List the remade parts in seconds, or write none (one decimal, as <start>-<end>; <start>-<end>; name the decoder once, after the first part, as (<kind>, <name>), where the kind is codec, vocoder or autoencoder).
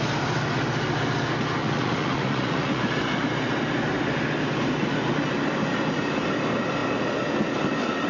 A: 1.6-2.8 (vocoder, Vocos)